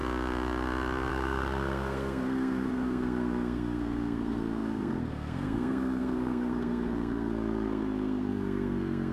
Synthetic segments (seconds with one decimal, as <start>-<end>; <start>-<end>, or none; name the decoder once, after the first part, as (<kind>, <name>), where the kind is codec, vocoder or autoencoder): 1.1-9.1 (codec, SNAC)